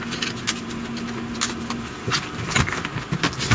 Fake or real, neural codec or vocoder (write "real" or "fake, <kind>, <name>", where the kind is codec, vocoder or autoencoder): real